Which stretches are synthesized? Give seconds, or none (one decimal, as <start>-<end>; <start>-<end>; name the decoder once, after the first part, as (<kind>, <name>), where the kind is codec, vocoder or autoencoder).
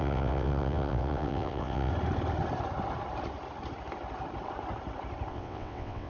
0.0-1.9 (vocoder, WaveNeXt); 5.3-6.1